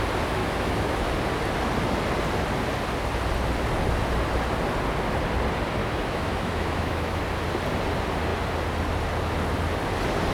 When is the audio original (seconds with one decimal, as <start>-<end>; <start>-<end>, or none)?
0.0-0.4; 1.1-5.8; 7.2-10.3